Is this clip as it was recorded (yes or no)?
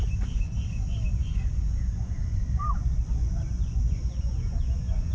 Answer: no